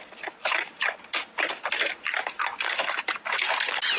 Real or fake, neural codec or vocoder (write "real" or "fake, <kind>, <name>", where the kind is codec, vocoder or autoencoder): real